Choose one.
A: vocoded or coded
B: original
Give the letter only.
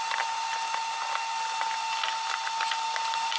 B